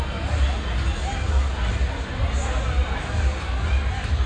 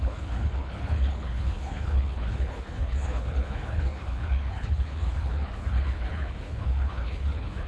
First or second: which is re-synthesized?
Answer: second